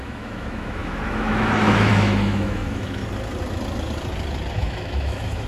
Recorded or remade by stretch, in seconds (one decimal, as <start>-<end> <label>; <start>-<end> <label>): 0.0-3.0 remade; 3.0-4.5 recorded; 4.5-5.5 remade